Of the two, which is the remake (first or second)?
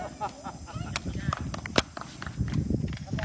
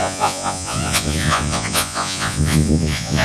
second